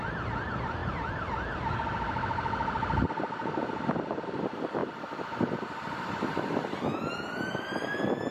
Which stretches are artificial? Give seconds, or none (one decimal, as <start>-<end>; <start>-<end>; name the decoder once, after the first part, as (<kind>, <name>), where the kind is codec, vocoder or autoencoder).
none